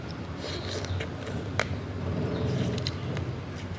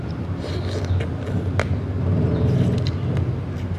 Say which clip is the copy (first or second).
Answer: first